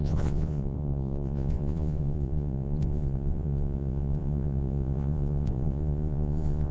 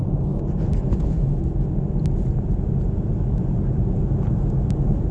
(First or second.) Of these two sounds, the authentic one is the second